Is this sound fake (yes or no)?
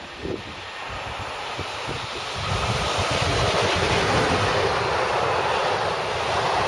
no